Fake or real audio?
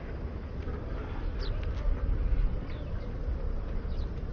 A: real